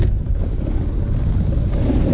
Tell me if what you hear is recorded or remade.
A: recorded